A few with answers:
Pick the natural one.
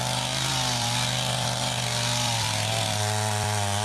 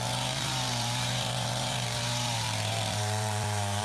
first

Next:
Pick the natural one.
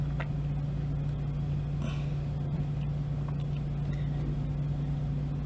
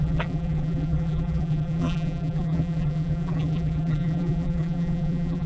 first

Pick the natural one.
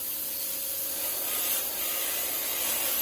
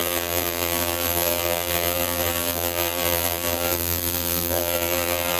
first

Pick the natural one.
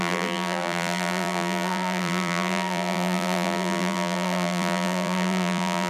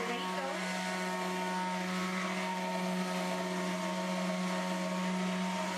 second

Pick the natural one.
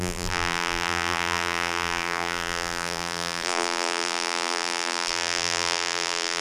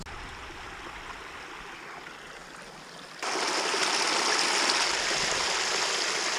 second